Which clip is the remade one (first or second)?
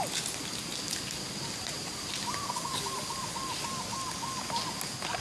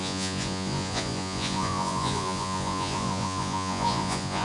second